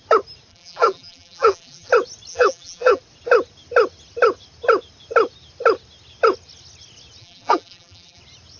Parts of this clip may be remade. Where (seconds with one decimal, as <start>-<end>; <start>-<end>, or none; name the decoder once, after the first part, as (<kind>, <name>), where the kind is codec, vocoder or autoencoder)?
0.5-1.9 (vocoder, BigVGAN v2); 2.3-3.0; 7.2-8.2